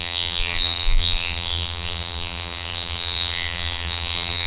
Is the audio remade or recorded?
remade